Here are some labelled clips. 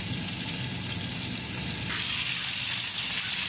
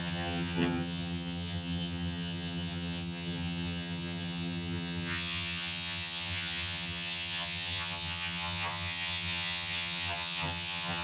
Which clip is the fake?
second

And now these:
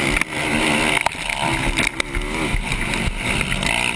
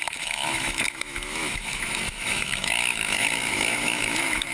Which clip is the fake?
second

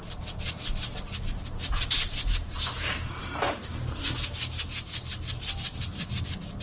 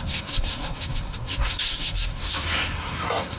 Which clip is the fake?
second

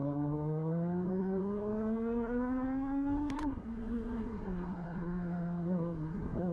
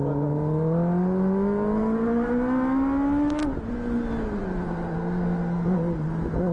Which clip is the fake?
first